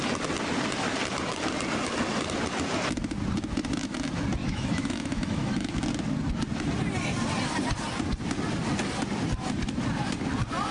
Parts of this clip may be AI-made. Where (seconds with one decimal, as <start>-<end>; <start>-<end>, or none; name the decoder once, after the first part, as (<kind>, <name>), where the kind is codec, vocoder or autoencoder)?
4.4-5.8 (autoencoder, DAC-VAE)